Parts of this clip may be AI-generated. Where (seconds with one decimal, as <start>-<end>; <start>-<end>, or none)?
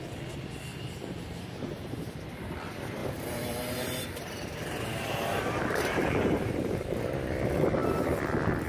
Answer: 0.7-2.1; 3.0-6.9